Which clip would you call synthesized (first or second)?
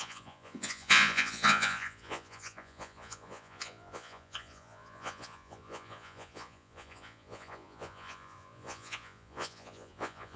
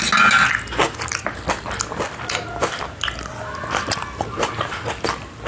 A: first